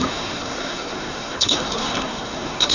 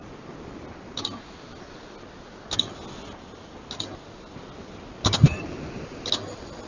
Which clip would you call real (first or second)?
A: second